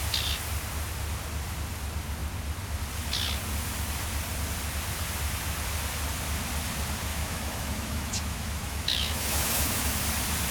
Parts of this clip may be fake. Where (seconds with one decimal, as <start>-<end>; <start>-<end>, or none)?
7.1-10.0